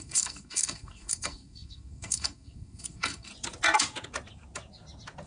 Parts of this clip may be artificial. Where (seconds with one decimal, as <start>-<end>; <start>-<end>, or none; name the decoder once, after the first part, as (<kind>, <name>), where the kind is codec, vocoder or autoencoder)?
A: 0.0-3.3 (codec, SNAC)